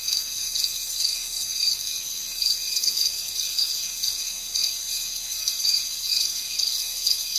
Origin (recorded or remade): remade